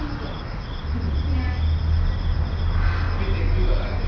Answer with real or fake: real